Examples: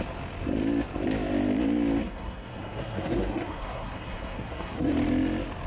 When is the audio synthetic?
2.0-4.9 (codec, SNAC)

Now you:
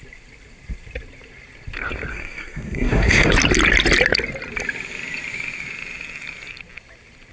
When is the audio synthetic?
2.1-3.3 (codec, SNAC)

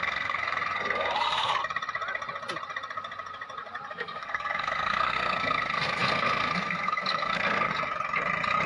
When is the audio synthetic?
0.0-1.6 (codec, SNAC); 3.9-7.7

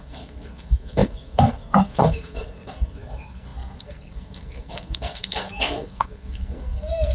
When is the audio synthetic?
0.0-7.1 (codec, SNAC)

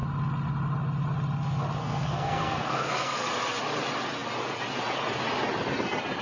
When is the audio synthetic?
1.8-3.3 (codec, SNAC)

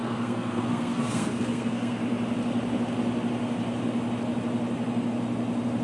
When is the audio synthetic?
0.0-2.0 (codec, SNAC)

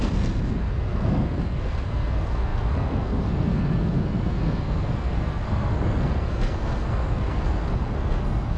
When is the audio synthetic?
0.0-8.6 (codec, SNAC)

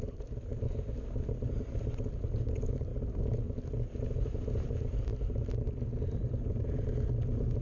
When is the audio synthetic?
none